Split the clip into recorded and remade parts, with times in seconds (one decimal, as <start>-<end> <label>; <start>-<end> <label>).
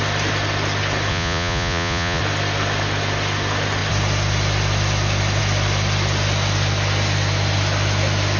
0.0-1.1 recorded; 1.1-2.2 remade; 2.2-8.4 recorded